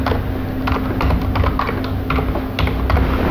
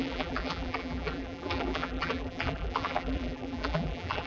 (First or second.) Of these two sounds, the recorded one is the first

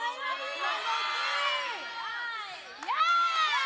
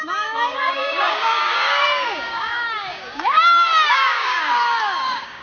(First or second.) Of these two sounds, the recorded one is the first